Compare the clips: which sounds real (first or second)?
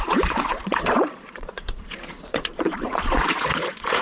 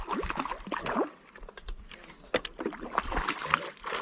second